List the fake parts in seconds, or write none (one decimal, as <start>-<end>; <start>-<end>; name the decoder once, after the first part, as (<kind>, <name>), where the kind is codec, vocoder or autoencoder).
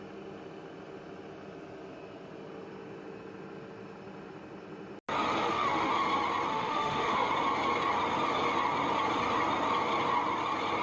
5.4-5.9 (autoencoder, DAC-VAE); 6.5-7.3